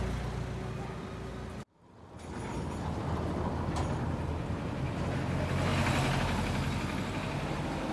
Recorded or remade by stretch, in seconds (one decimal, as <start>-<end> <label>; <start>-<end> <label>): 0.0-7.9 recorded